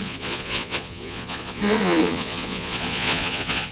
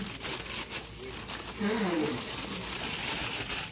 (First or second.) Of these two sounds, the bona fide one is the second